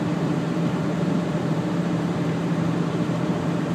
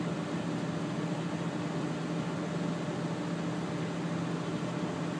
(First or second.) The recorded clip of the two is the second